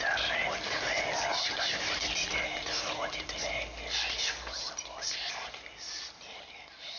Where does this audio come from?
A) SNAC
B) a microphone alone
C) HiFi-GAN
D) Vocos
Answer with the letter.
B